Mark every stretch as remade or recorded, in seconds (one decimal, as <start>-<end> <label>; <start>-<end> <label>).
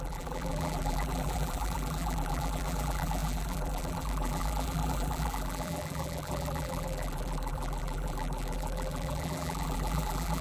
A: 0.0-10.4 remade